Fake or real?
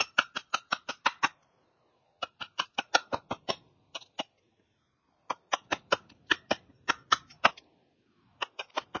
real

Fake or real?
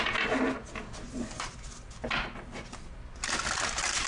real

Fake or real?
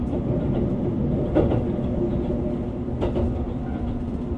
real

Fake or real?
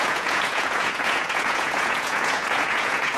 fake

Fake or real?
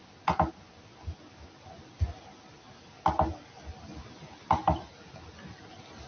real